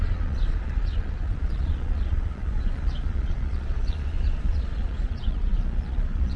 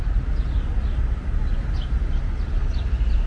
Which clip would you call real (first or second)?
second